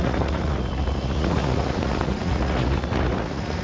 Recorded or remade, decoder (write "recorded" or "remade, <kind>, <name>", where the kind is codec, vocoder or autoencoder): remade, vocoder, Vocos